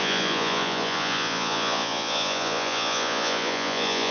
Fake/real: fake